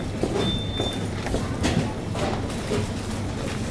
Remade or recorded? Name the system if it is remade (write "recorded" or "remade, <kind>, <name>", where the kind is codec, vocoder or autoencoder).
recorded